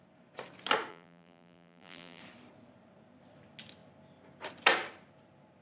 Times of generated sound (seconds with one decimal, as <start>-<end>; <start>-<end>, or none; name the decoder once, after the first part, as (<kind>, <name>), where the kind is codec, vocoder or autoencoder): 0.9-2.2 (vocoder, BigVGAN v2)